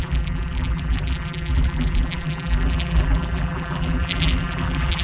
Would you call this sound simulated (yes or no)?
yes